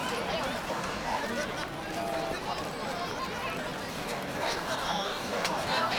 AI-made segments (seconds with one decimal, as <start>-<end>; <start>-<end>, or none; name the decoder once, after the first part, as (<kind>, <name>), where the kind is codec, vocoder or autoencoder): 0.7-1.2 (codec, DAC); 3.9-6.0